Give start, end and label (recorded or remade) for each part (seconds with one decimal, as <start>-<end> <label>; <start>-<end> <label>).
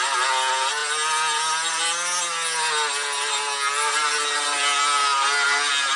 0.0-6.0 recorded